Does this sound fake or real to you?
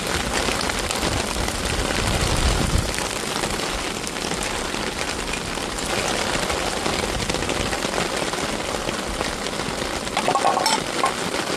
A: real